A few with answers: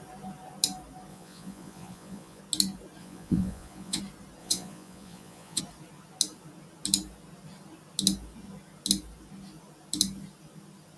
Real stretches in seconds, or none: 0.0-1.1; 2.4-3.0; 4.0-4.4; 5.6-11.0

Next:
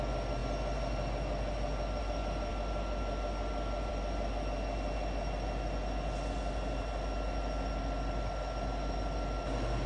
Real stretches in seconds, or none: 0.0-9.9

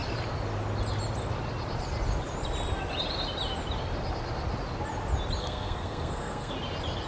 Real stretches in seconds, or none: 0.0-5.4; 6.5-7.1

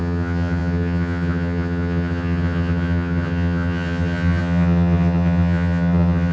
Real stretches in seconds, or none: none

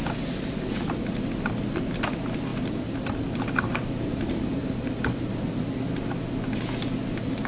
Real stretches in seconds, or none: 0.0-2.5; 6.2-7.5